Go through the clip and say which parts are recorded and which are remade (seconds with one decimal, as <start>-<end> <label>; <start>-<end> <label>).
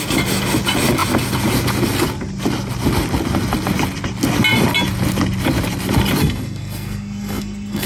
0.0-6.2 recorded; 6.2-7.9 remade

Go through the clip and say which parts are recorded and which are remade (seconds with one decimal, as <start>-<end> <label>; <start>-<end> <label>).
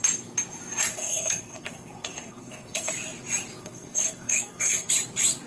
0.0-0.9 recorded; 0.9-2.9 remade; 2.9-3.6 recorded; 3.6-4.9 remade; 4.9-5.5 recorded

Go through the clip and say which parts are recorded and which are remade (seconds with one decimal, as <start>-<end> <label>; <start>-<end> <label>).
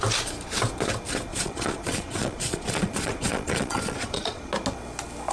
0.0-1.3 recorded; 1.3-4.5 remade; 4.5-5.3 recorded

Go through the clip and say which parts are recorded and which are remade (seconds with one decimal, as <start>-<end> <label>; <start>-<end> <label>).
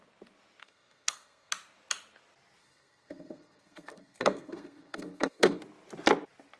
0.0-0.6 recorded; 0.6-1.5 remade; 1.5-2.6 recorded; 2.6-5.6 remade; 5.6-6.6 recorded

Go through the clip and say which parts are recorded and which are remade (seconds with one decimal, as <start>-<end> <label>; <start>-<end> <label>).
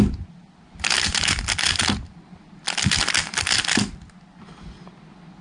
0.0-5.4 recorded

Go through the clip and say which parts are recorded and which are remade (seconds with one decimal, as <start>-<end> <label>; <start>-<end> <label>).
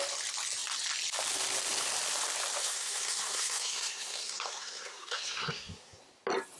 0.0-2.6 recorded; 2.6-6.0 remade; 6.0-6.6 recorded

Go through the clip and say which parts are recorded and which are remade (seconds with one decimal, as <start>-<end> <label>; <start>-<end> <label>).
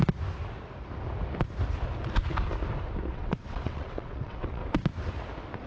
0.0-3.1 recorded; 3.1-4.6 remade; 4.6-5.7 recorded